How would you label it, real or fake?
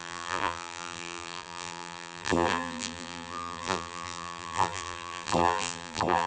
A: fake